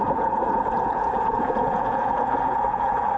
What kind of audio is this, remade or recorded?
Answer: remade